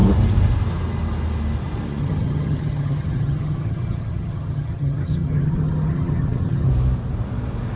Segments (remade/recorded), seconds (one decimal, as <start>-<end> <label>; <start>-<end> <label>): 0.0-2.0 recorded; 2.0-6.7 remade; 6.7-7.8 recorded